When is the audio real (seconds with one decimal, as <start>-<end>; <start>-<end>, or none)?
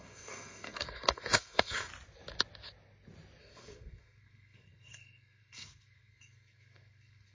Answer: 1.9-3.4